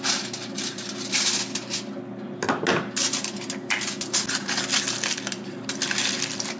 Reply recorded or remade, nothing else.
recorded